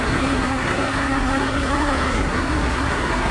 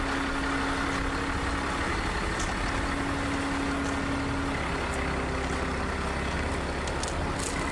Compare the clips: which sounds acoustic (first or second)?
second